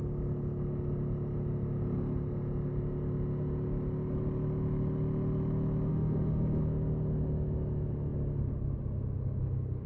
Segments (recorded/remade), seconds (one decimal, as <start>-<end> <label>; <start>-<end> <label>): 0.0-5.9 recorded; 5.9-6.6 remade; 6.6-9.9 recorded